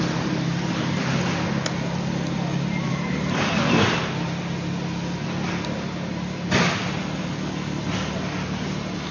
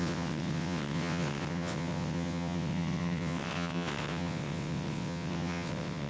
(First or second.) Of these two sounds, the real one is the first